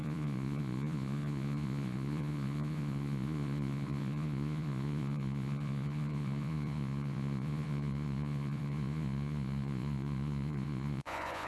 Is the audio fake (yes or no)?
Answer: yes